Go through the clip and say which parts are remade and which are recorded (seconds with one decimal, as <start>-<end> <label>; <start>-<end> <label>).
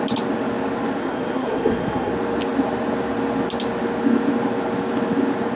0.0-1.0 recorded; 1.0-2.1 remade; 2.1-5.6 recorded